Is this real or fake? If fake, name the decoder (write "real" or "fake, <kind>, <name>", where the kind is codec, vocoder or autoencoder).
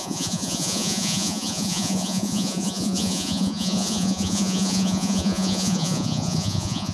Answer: fake, vocoder, Vocos